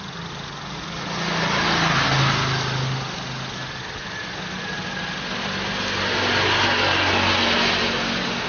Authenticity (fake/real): real